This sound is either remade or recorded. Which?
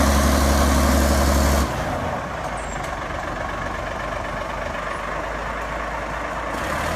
recorded